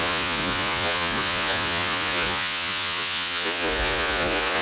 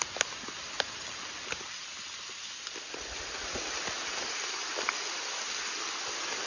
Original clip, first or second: second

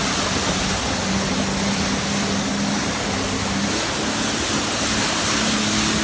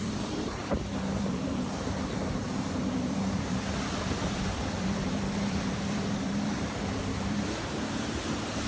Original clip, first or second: first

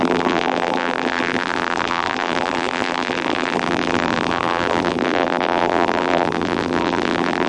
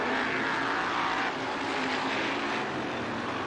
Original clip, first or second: second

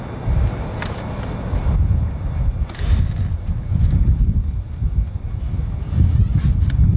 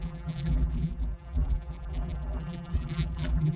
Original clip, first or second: first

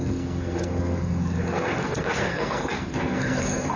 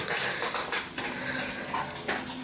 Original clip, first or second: second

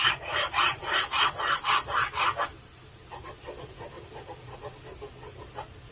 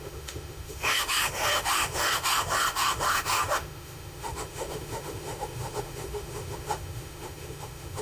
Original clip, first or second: first